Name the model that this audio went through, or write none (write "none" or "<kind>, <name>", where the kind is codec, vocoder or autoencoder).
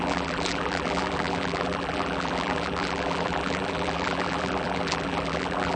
vocoder, BigVGAN v2